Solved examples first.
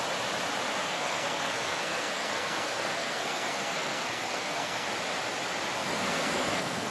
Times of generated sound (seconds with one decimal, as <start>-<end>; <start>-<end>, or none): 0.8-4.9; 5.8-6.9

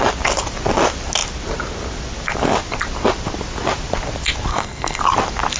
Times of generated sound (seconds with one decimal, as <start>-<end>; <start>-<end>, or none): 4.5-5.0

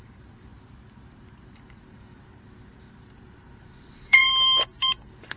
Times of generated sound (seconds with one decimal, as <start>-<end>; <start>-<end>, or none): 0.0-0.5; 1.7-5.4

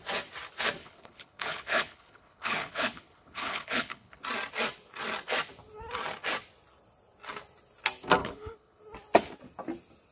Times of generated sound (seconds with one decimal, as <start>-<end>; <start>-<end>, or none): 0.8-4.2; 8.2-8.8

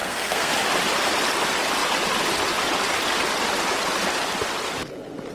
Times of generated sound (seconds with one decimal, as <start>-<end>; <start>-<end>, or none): 0.0-0.5